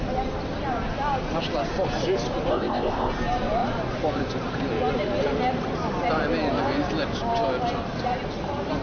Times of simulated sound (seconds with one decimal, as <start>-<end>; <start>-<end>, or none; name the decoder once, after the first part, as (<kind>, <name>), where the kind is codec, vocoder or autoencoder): 2.5-3.1 (codec, ZipCodec)